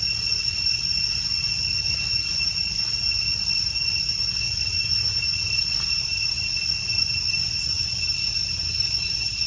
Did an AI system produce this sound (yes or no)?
no